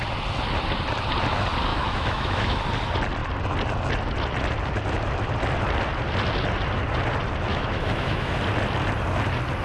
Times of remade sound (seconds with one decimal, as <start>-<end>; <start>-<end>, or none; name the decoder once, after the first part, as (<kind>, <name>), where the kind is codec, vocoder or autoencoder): 1.7-2.6 (autoencoder, DAC-VAE); 7.5-8.4